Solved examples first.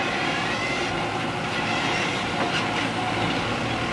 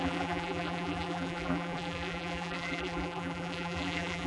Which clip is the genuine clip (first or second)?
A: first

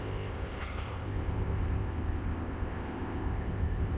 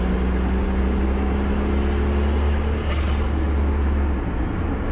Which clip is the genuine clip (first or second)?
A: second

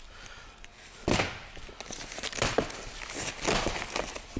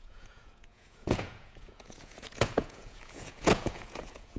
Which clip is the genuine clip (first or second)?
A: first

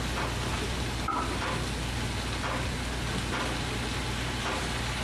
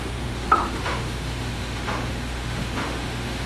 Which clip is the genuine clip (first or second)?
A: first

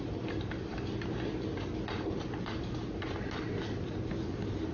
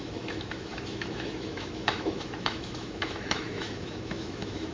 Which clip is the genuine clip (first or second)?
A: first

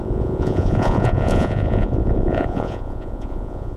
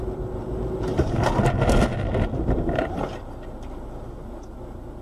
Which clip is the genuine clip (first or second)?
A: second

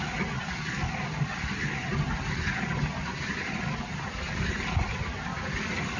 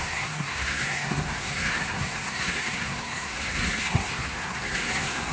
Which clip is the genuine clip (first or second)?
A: first